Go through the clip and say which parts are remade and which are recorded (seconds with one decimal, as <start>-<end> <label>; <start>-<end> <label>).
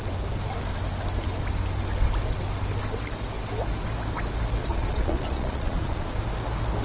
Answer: 0.0-4.6 recorded; 4.6-6.2 remade; 6.2-6.8 recorded